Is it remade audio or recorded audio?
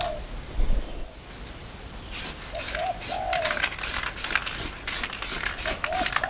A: recorded